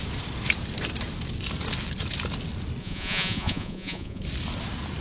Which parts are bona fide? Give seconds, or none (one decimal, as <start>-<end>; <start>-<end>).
0.0-2.8; 4.2-5.0